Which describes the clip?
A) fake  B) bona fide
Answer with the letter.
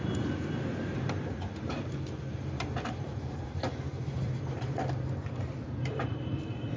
A